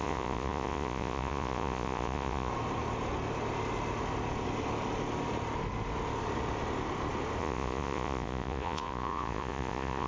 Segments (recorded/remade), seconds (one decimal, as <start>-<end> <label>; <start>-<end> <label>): 0.0-2.5 remade; 2.5-7.4 recorded; 7.4-10.1 remade